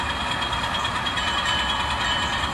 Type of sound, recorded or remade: recorded